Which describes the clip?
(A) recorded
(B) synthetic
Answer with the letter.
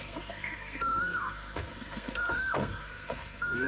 B